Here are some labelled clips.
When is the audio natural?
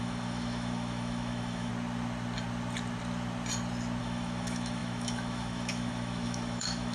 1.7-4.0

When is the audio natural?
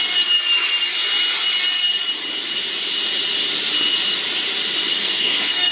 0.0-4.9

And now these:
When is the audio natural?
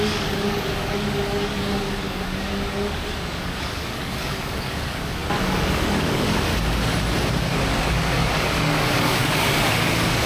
6.5-7.4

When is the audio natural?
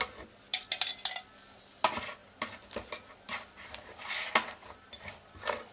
0.0-5.7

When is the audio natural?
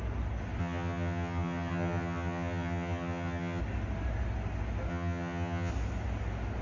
0.0-0.6; 3.6-4.9; 5.7-6.6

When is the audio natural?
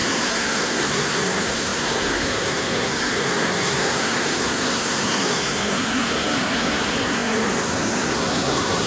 none